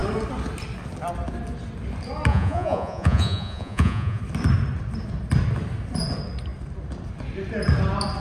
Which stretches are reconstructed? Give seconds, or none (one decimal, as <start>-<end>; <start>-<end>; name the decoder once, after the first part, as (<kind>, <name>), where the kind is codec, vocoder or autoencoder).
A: 2.3-4.2 (vocoder, Vocos)